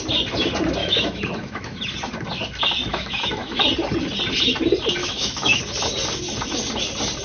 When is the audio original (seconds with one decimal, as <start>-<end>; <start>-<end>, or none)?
0.0-0.8; 1.8-2.9; 3.6-5.0; 5.6-7.2